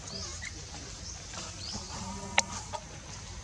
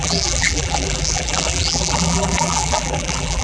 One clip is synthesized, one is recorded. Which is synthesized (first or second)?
second